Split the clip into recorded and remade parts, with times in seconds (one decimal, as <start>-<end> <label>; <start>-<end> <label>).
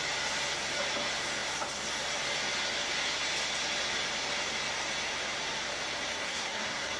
0.0-6.1 recorded; 6.1-7.0 remade